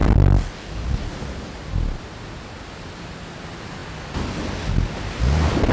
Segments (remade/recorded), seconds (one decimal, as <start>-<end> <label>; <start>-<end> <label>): 0.0-5.7 recorded